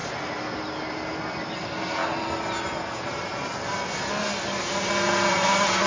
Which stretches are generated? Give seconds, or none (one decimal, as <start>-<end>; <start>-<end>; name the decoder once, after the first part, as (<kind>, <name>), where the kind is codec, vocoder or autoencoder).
0.0-1.3 (vocoder, BigVGAN v2)